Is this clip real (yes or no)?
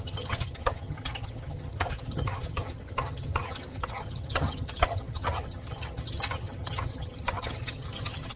no